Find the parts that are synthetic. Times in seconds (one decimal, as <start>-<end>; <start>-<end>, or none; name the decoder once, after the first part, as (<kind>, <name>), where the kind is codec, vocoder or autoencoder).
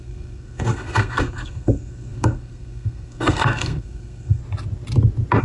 0.0-4.4 (codec, SNAC)